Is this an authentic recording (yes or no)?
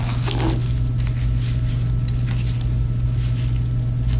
yes